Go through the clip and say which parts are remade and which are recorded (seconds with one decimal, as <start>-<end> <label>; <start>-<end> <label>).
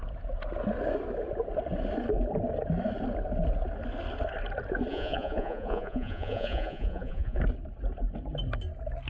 0.0-4.9 recorded; 4.9-7.4 remade; 7.4-9.1 recorded